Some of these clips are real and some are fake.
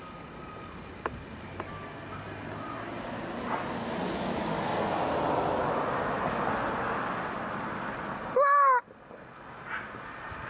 real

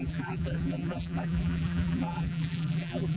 fake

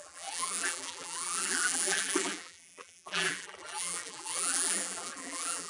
fake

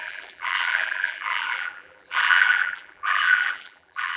fake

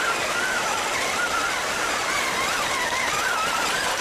real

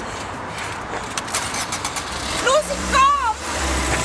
fake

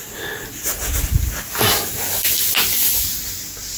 real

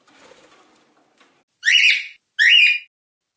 real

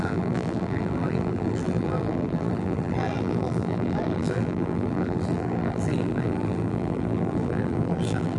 fake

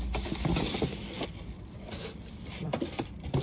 fake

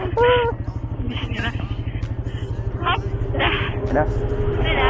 real